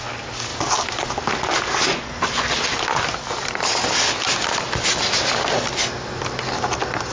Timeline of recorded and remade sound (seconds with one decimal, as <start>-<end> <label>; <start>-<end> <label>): 0.0-7.1 recorded